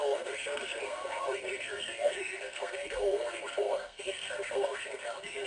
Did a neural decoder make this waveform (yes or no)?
yes